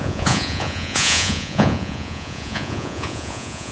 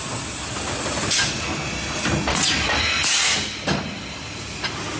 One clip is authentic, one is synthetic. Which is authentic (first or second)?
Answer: second